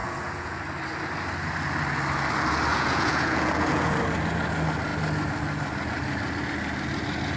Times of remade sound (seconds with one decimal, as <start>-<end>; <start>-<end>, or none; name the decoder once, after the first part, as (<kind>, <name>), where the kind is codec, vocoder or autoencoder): 0.0-0.6 (vocoder, Vocos); 2.7-4.0